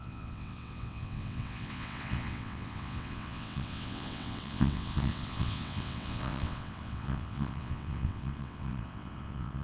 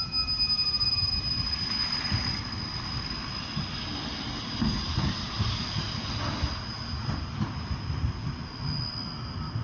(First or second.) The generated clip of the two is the first